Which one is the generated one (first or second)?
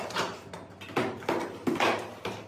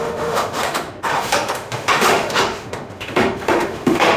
second